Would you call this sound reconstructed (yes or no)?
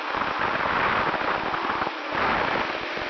no